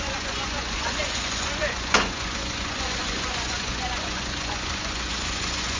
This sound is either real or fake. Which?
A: fake